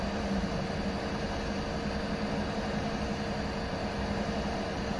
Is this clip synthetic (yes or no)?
no